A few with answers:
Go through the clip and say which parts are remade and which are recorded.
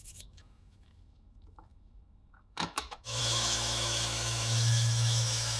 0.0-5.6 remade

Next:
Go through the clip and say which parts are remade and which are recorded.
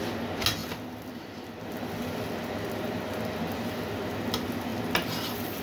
0.0-0.6 recorded; 0.6-3.9 remade; 3.9-5.6 recorded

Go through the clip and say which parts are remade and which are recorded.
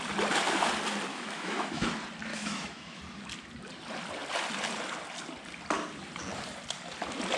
0.0-1.1 recorded; 1.1-1.9 remade; 1.9-2.3 recorded; 2.3-3.0 remade; 3.0-7.4 recorded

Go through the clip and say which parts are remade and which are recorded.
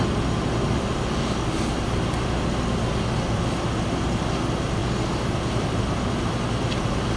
0.0-7.2 recorded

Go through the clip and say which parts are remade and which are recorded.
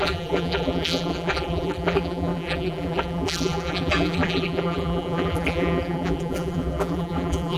0.0-7.6 remade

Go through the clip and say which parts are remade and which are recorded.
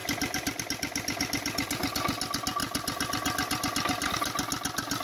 0.0-5.0 recorded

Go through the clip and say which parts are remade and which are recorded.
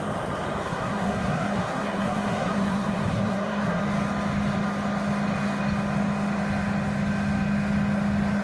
0.0-0.6 recorded; 0.6-3.8 remade; 3.8-8.4 recorded